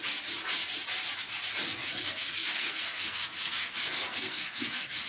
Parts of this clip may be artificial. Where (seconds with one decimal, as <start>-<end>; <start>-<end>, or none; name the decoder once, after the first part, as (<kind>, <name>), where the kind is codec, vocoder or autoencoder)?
1.8-5.1 (codec, SNAC)